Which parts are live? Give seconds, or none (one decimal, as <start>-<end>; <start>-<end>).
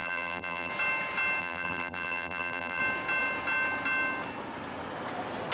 0.7-1.4; 2.8-5.5